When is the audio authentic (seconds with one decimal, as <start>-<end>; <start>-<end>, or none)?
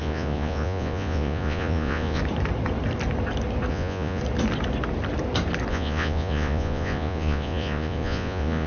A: 2.2-3.7; 4.2-5.7